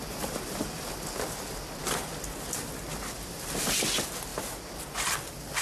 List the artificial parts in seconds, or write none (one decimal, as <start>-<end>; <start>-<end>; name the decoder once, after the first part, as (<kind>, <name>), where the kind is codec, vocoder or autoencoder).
none